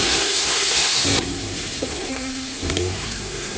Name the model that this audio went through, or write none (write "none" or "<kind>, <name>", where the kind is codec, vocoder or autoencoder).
codec, SNAC